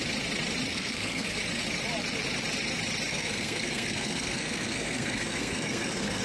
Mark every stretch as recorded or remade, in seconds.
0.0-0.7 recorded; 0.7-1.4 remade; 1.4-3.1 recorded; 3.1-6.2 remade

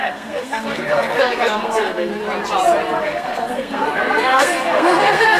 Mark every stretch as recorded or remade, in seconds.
0.0-2.1 remade; 2.1-3.0 recorded; 3.0-5.4 remade

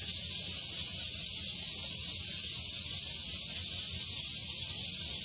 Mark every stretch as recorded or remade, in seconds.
0.0-5.2 recorded

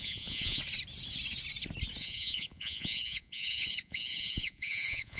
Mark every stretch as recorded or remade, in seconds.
0.0-0.6 remade; 0.6-2.0 recorded; 2.0-5.2 remade

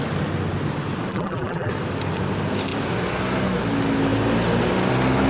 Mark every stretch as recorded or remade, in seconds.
0.0-1.1 recorded; 1.1-1.7 remade; 1.7-5.3 recorded